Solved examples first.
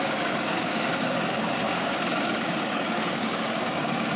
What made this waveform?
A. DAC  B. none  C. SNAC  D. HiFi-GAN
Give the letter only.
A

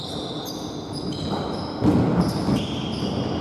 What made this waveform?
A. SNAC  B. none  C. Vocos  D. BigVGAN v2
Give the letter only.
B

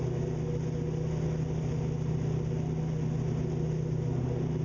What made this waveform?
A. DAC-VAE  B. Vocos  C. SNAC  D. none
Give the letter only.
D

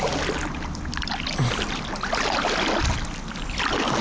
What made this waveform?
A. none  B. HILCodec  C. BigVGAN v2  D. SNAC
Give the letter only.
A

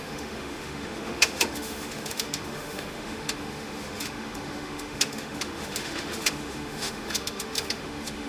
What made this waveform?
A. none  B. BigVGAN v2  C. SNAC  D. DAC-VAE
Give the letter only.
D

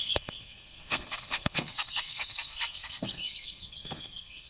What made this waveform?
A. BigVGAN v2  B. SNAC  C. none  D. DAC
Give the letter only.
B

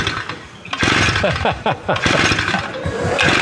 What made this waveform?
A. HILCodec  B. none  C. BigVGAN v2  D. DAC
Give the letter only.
B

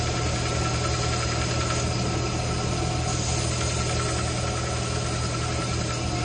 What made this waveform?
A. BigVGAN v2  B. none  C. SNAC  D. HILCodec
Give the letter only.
B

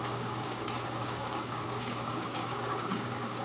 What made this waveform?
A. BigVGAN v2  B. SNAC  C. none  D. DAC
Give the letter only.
D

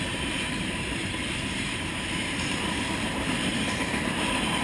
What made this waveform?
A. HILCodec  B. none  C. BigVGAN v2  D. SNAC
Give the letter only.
C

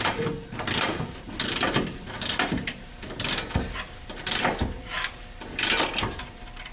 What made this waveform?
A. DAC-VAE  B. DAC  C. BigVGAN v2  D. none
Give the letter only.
C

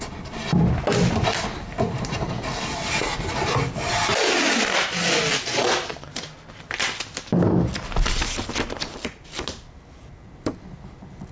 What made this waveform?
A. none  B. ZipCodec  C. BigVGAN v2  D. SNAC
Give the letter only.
A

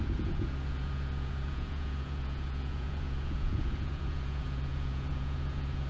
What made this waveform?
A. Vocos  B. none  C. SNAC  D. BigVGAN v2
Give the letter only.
A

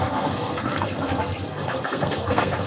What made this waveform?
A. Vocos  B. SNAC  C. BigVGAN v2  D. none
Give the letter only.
B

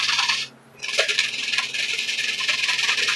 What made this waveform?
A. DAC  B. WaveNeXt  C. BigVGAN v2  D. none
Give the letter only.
D